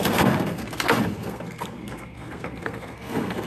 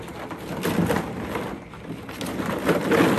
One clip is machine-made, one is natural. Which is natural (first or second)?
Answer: second